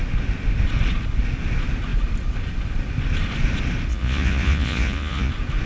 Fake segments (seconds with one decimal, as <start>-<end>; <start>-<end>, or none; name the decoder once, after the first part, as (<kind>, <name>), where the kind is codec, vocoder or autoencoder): 3.9-5.3 (vocoder, Vocos)